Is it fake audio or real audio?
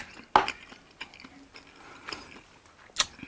real